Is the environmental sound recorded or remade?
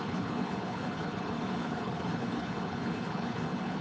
remade